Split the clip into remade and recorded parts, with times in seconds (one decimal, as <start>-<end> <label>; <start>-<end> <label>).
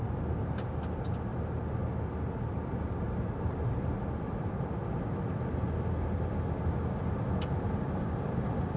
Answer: 0.0-8.8 recorded